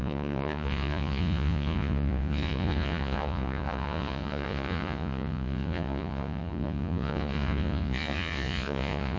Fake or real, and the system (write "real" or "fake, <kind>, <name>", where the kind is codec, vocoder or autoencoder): fake, vocoder, Vocos